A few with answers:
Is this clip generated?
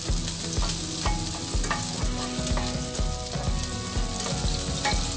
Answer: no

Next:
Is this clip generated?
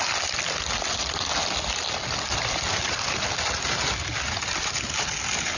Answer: no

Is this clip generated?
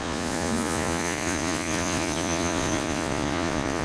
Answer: yes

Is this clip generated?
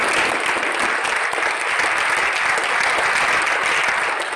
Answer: no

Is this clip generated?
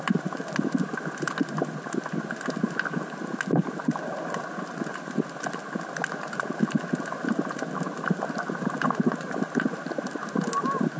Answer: no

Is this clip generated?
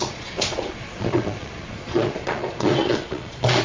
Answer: yes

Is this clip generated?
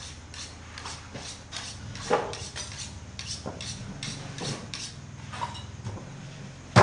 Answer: no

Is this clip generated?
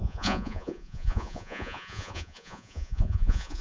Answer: yes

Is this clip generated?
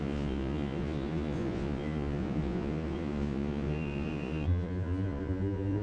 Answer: yes